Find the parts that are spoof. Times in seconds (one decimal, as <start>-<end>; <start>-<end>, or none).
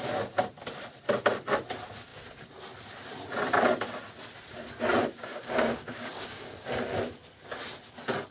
5.3-6.7